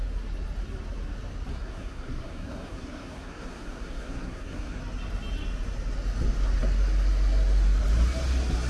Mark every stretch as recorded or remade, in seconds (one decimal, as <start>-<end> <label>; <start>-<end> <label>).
0.0-1.5 recorded; 1.5-4.8 remade; 4.8-8.7 recorded